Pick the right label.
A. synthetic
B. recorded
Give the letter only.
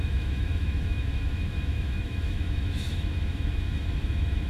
A